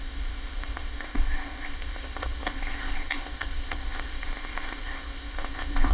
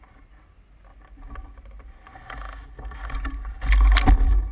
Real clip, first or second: second